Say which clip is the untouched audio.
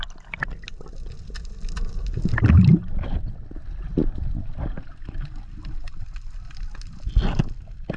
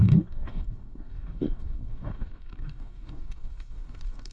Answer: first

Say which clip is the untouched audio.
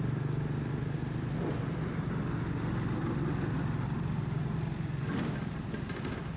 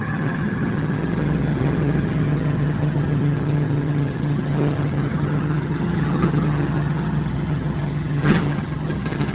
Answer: first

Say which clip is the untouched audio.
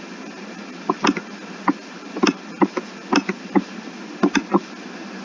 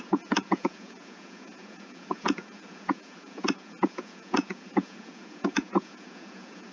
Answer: first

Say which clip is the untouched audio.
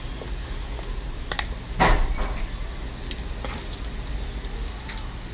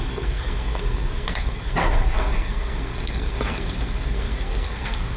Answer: first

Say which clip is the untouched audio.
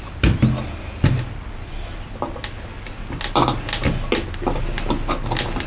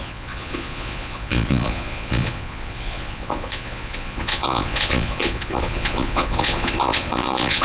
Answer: first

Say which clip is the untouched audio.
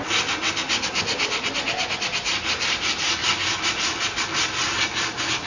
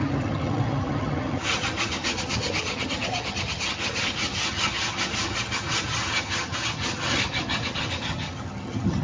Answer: first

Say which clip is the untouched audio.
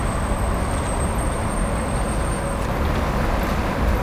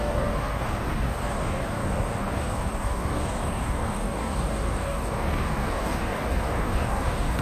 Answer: first